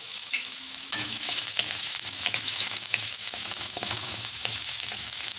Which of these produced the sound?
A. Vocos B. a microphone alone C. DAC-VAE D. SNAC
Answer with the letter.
C